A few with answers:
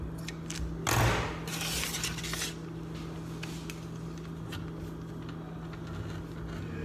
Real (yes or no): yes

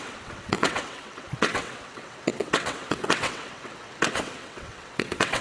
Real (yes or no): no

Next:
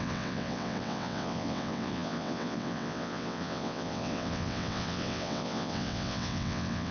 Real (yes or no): no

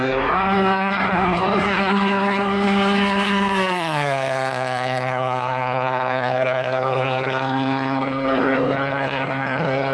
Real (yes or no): no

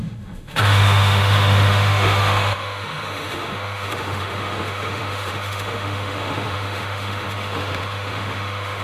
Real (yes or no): no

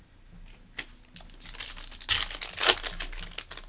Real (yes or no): yes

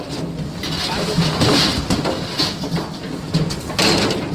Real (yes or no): yes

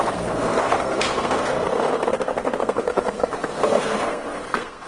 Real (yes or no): no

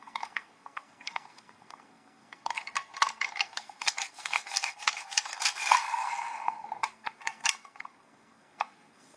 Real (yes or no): no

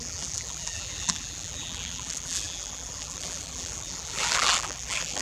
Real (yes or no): no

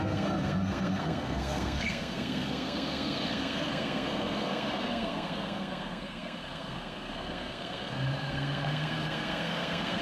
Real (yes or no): no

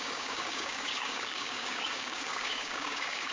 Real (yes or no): no